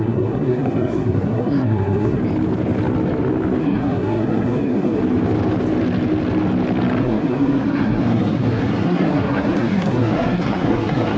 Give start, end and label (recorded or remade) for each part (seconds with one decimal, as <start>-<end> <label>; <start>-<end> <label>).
0.0-2.2 remade; 2.2-3.6 recorded; 3.6-5.0 remade; 5.0-7.0 recorded; 7.0-11.2 remade